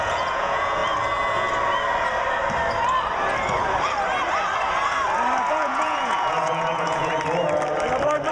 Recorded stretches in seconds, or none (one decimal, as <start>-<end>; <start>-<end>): 0.8-5.5; 7.1-8.3